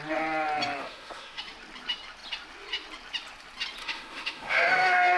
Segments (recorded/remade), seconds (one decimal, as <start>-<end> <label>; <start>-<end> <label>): 0.0-0.8 recorded; 0.8-1.4 remade; 1.4-3.8 recorded; 3.8-5.2 remade